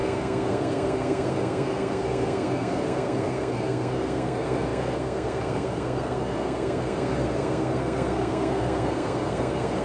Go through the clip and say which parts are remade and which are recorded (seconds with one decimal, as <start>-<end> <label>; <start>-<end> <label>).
0.0-9.8 remade